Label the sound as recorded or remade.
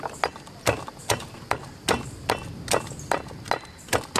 recorded